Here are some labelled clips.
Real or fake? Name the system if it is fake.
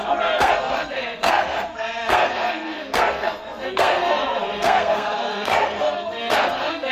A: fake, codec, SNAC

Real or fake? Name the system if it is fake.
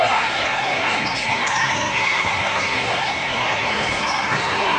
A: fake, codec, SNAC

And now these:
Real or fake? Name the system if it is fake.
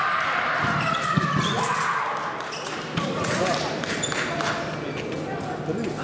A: real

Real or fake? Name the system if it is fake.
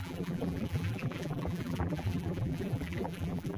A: fake, vocoder, BigVGAN v2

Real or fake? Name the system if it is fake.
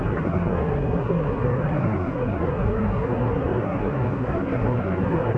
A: fake, codec, SNAC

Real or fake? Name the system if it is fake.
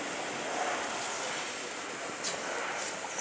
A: real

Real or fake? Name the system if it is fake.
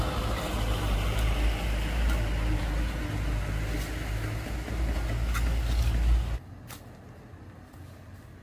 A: real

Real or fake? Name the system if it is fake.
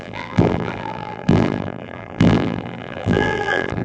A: fake, vocoder, BigVGAN v2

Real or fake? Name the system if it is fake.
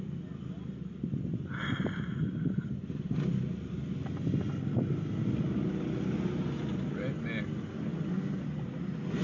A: real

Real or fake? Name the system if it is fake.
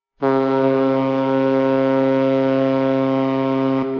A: fake, autoencoder, DAC-VAE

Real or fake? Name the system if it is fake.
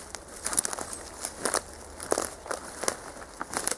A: real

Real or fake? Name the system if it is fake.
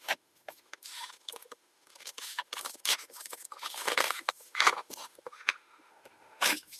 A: fake, autoencoder, DAC-VAE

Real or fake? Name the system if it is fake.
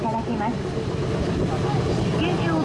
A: real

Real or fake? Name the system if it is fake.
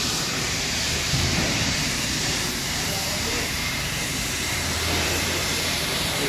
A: fake, vocoder, BigVGAN v2